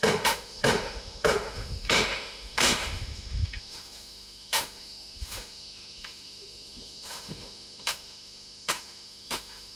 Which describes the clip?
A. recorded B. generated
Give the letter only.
B